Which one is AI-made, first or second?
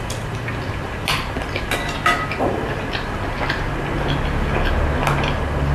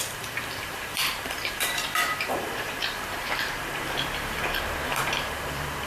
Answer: second